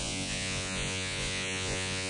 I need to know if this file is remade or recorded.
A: remade